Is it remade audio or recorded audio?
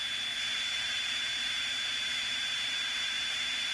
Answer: recorded